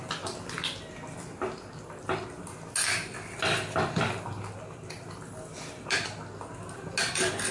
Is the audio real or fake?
real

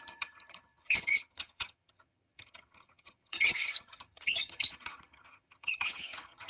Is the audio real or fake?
fake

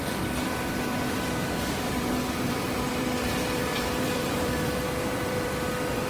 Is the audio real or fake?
fake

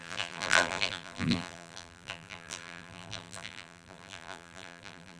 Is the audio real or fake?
fake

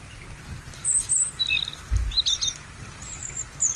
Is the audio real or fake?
real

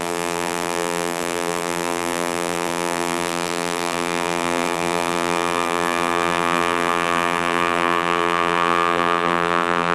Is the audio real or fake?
fake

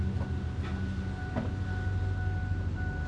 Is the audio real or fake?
real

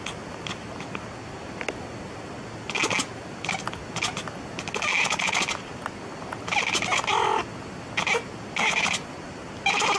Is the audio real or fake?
real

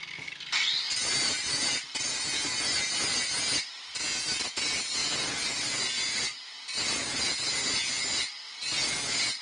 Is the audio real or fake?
real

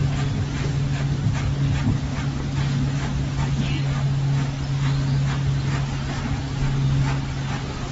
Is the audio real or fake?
real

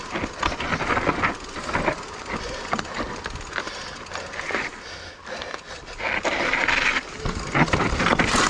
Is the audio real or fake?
real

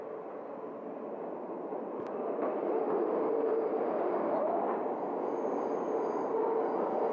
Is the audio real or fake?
real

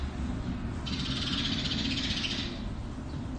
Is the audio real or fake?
real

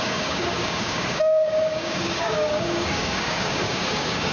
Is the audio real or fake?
fake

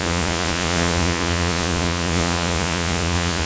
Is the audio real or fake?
fake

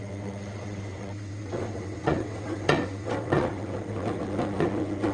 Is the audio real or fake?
fake